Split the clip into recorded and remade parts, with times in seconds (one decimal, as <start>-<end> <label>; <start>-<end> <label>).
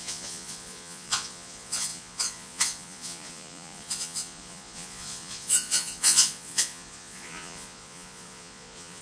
0.0-9.0 remade